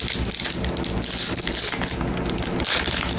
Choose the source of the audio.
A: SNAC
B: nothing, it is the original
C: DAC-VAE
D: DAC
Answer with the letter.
B